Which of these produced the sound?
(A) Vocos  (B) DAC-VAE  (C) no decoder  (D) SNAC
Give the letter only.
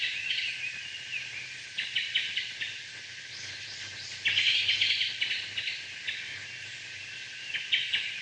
C